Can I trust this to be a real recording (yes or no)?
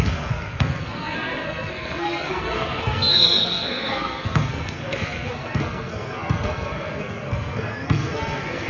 no